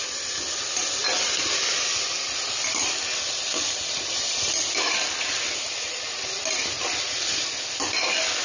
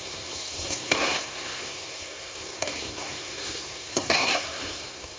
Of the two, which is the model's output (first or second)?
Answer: second